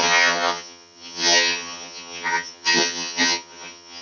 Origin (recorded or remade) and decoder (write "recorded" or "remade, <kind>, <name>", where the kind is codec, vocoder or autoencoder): remade, vocoder, HiFi-GAN